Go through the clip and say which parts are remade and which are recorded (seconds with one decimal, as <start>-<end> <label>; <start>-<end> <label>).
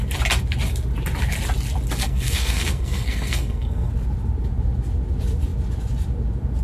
0.0-2.0 recorded; 2.0-3.9 remade; 3.9-6.6 recorded